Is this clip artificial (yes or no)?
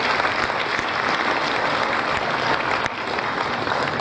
no